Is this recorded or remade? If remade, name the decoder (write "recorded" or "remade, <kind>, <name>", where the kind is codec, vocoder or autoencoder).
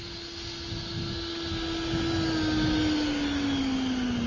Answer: recorded